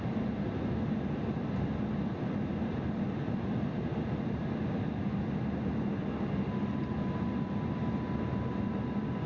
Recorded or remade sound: recorded